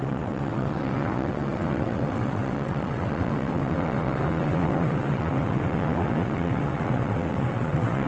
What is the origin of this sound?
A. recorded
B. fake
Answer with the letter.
B